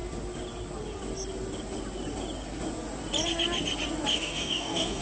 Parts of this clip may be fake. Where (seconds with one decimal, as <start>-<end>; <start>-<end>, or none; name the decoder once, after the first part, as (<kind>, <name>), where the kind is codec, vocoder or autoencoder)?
4.1-5.0 (codec, DAC)